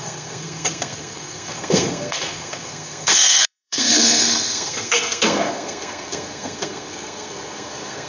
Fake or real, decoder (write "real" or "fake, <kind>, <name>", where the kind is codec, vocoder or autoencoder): fake, codec, SNAC